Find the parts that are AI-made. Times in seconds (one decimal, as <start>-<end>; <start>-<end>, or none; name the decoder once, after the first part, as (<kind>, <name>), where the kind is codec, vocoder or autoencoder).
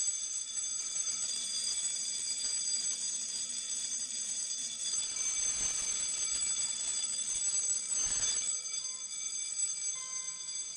0.7-4.9 (vocoder, BigVGAN v2)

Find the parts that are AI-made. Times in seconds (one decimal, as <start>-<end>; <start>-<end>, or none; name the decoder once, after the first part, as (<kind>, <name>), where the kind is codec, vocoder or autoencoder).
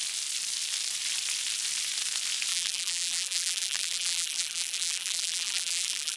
2.5-6.2 (vocoder, BigVGAN v2)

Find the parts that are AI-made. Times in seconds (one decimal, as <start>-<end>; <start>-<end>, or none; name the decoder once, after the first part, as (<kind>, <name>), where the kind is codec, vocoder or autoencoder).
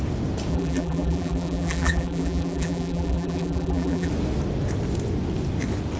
0.5-4.1 (vocoder, BigVGAN v2)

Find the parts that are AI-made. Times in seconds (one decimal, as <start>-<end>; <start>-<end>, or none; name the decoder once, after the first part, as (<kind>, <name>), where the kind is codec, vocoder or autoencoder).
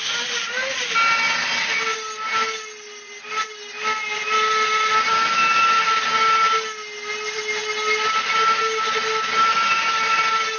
none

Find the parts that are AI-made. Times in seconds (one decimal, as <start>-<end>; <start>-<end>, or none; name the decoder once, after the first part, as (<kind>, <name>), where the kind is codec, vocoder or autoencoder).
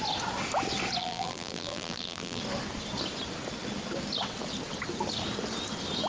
1.0-2.4 (vocoder, BigVGAN v2)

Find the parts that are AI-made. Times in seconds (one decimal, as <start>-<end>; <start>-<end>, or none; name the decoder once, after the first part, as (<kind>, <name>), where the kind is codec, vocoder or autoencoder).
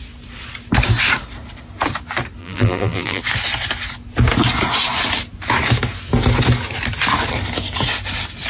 2.4-3.2 (vocoder, BigVGAN v2)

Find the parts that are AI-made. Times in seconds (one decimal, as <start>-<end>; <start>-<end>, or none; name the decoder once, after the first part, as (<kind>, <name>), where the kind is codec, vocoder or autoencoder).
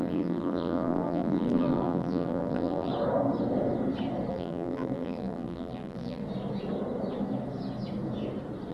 0.0-2.9 (vocoder, BigVGAN v2); 4.3-6.2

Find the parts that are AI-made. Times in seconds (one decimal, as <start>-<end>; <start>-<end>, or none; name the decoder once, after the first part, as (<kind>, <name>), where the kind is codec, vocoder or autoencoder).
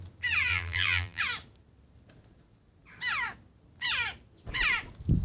0.5-1.2 (vocoder, BigVGAN v2)